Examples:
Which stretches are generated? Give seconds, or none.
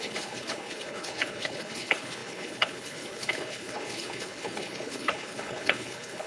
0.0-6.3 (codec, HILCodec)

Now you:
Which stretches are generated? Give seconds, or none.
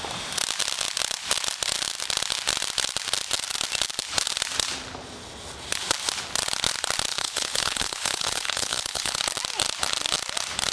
7.1-9.2 (codec, HILCodec)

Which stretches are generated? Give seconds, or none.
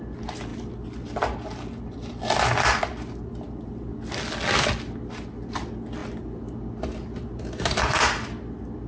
none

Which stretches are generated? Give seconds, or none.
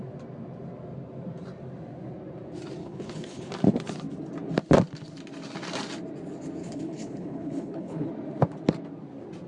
2.8-3.5 (codec, HILCodec); 6.6-8.1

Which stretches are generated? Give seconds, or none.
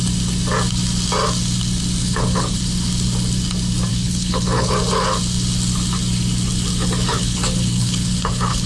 2.0-2.6 (codec, HILCodec); 3.9-4.7; 7.1-8.7